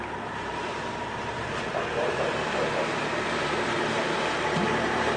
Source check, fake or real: fake